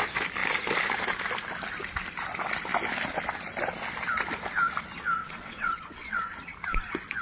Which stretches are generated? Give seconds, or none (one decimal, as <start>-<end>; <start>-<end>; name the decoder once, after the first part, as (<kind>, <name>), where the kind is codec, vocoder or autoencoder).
5.2-6.3 (vocoder, WaveNeXt)